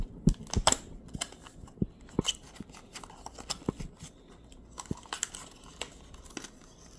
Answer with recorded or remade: recorded